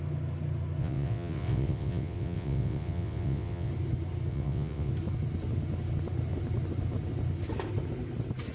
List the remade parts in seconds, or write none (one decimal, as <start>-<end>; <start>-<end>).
0.8-3.7; 4.3-4.9